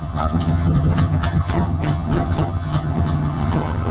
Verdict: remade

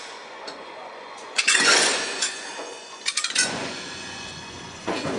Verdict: remade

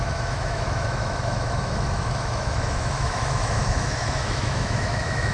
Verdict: remade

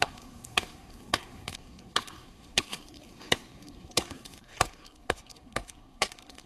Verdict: remade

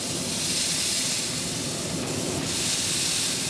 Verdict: recorded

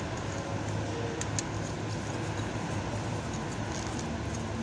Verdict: recorded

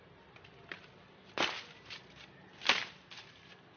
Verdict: recorded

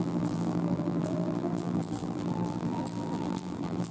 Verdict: remade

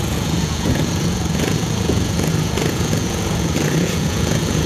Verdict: remade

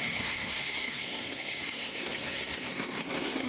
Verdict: remade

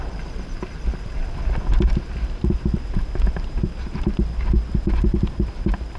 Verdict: recorded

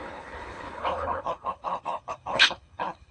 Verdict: remade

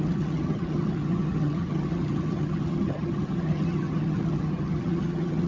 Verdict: remade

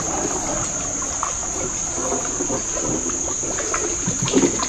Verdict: recorded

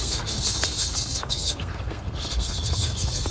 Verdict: remade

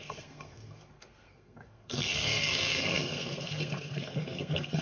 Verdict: remade